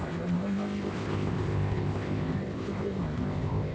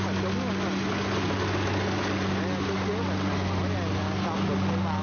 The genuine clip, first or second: second